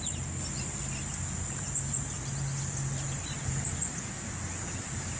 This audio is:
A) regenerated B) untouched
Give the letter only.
B